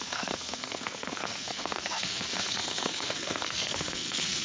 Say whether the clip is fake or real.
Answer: fake